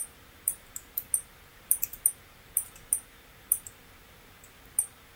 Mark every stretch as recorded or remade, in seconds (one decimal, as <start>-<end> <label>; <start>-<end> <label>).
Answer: 0.0-5.2 remade